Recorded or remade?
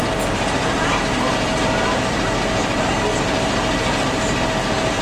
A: recorded